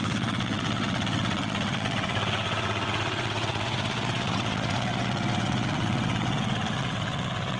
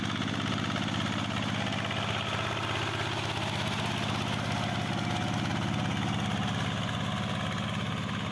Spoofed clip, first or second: first